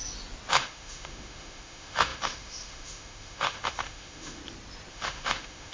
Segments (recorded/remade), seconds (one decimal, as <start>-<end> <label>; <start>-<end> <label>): 0.0-0.5 recorded; 0.5-4.4 remade; 4.4-4.9 recorded; 4.9-5.7 remade